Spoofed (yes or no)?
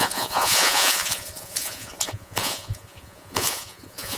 yes